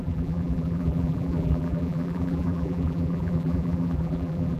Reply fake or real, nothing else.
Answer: fake